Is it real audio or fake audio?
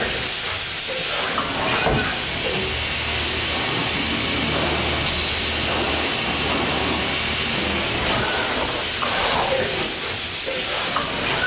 real